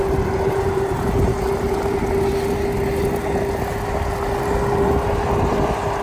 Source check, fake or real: real